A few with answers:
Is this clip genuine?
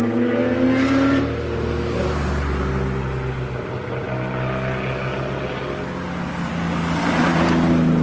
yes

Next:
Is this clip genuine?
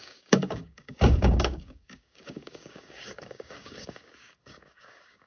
no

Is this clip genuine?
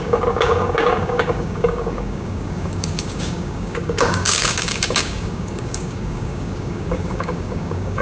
no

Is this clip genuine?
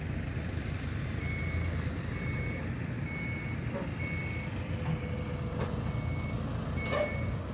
yes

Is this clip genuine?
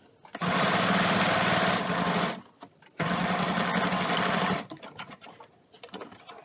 yes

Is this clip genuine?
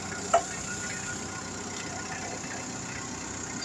yes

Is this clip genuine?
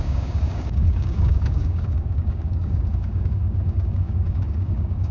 no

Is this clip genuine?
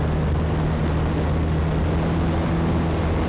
yes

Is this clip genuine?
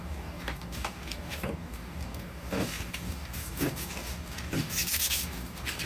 no